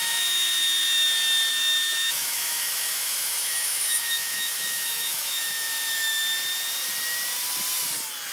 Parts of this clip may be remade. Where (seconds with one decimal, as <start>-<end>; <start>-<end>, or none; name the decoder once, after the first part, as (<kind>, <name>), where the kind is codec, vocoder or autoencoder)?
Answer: 0.0-1.1 (autoencoder, DAC-VAE); 1.5-6.2